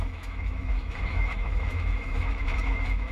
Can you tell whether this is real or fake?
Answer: fake